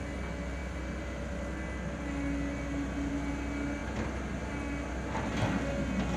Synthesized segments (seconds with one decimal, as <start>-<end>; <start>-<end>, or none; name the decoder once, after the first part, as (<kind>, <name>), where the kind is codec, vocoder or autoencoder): none